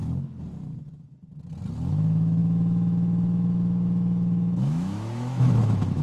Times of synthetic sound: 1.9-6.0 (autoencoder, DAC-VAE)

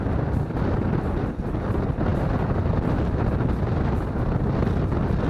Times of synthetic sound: none

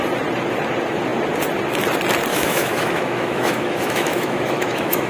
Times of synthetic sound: 2.3-5.1 (autoencoder, DAC-VAE)

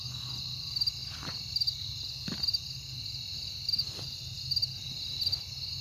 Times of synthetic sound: none

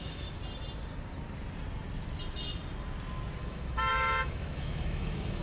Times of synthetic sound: 0.0-0.4 (autoencoder, DAC-VAE); 3.4-5.4

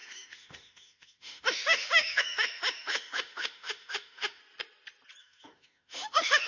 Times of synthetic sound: 0.0-4.4 (autoencoder, DAC-VAE); 5.2-6.5

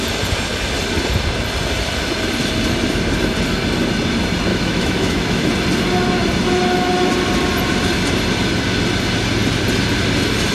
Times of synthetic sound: 4.5-5.5 (autoencoder, DAC-VAE)

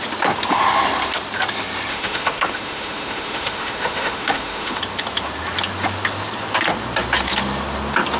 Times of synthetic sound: 1.9-4.8 (autoencoder, DAC-VAE)